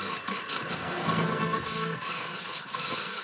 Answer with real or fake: fake